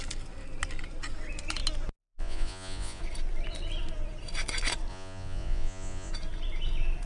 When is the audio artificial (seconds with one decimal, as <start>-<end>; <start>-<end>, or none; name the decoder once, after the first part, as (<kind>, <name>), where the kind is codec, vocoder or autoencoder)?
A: 2.0-3.0 (vocoder, Vocos); 4.9-6.1